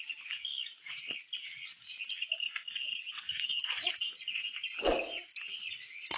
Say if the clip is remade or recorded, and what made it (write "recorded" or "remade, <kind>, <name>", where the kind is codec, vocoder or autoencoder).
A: recorded